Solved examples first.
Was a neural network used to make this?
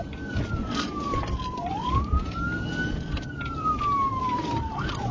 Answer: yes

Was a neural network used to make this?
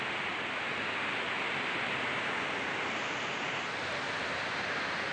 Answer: no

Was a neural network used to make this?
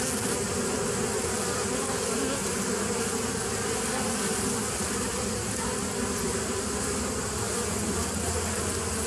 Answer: no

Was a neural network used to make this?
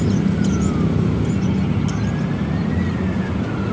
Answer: no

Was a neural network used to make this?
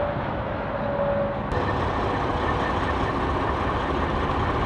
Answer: no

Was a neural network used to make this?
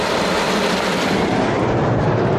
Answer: no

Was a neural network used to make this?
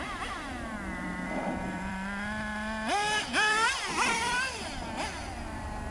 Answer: yes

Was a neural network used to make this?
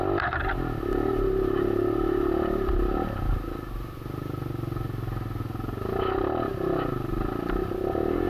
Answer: no